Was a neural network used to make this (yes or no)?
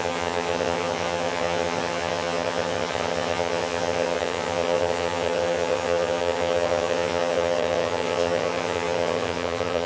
yes